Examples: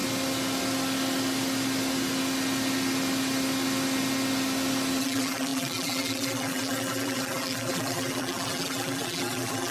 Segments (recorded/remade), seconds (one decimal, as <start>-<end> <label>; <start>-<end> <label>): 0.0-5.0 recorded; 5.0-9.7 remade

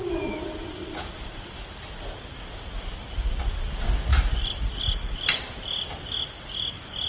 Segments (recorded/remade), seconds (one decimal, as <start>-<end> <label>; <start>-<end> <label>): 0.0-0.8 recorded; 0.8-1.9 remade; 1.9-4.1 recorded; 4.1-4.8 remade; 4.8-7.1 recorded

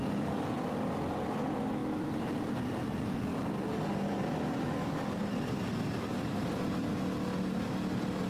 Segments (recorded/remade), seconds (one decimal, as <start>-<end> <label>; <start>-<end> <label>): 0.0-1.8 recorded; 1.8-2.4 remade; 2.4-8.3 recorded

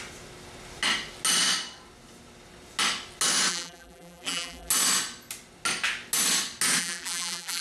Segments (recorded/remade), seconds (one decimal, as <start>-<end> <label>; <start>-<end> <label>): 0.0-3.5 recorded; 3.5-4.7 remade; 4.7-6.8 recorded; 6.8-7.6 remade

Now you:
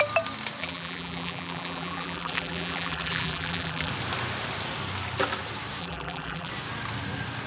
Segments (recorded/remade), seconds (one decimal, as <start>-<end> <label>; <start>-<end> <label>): 0.0-0.6 recorded; 0.6-3.9 remade; 3.9-5.8 recorded; 5.8-6.5 remade; 6.5-7.5 recorded

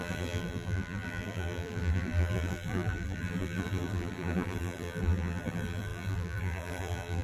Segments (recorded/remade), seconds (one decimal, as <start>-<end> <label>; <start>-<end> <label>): 0.0-7.2 remade